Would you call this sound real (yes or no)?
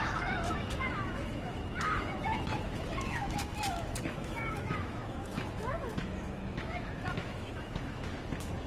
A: no